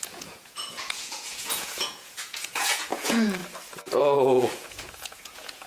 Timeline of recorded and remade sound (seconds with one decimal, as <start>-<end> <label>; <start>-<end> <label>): 0.0-3.4 remade; 3.4-4.0 recorded; 4.0-5.7 remade